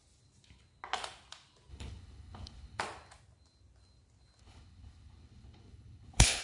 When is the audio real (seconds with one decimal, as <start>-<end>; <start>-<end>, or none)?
0.0-1.7; 2.8-4.4